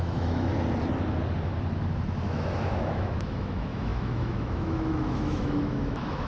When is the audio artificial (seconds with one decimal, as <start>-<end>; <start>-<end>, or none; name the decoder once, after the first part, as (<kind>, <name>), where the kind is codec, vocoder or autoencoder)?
0.0-0.5 (autoencoder, DAC-VAE); 2.2-6.3